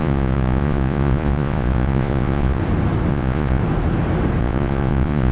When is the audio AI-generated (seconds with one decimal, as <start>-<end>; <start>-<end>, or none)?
0.0-2.6; 3.1-3.6; 4.4-5.3